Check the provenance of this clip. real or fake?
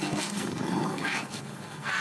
fake